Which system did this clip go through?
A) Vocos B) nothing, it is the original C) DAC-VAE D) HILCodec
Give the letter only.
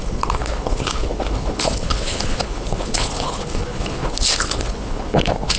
D